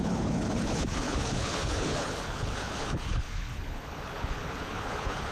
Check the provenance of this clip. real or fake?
fake